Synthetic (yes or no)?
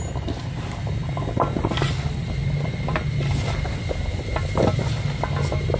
no